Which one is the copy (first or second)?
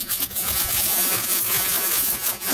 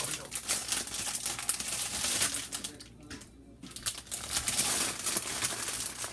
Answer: first